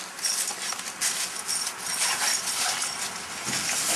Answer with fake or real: real